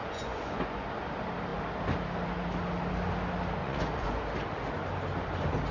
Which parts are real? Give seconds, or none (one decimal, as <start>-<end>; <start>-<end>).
0.9-3.6; 4.2-5.7